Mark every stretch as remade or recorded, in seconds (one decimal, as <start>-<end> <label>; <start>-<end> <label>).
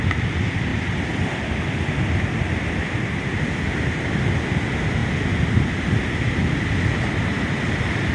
0.0-8.1 recorded